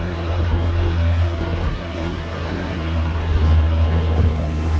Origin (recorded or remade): remade